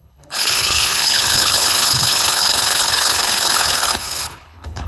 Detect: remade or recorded remade